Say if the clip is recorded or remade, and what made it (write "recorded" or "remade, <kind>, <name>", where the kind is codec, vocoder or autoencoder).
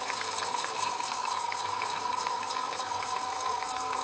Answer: remade, codec, SNAC